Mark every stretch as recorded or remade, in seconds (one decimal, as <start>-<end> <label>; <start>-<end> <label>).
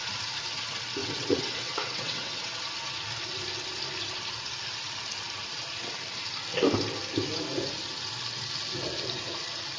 0.0-1.0 recorded; 1.0-2.6 remade; 2.6-9.8 recorded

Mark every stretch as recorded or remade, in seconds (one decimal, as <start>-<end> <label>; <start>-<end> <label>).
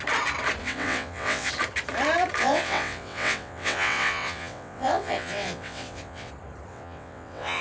0.0-0.6 recorded; 0.6-1.5 remade; 1.5-2.4 recorded; 2.4-6.3 remade; 6.3-6.7 recorded; 6.7-7.6 remade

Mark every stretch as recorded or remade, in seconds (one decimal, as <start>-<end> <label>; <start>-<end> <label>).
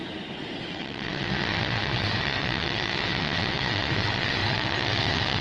0.0-0.7 recorded; 0.7-5.4 remade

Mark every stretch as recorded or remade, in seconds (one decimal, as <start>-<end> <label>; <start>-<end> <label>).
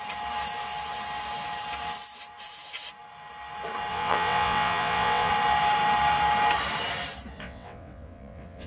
0.0-3.9 recorded; 3.9-5.3 remade; 5.3-7.4 recorded; 7.4-8.7 remade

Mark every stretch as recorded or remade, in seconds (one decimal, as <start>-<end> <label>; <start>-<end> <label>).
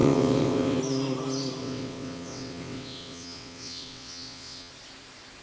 0.0-0.8 remade; 0.8-1.6 recorded; 1.6-4.7 remade; 4.7-5.4 recorded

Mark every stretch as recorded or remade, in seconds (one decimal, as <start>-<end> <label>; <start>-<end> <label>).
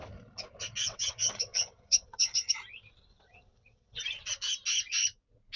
0.0-0.8 recorded; 0.8-2.5 remade; 2.5-3.1 recorded; 3.1-4.0 remade; 4.0-5.6 recorded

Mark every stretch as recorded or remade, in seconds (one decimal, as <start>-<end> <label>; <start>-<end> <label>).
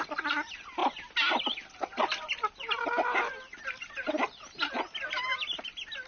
0.0-6.1 recorded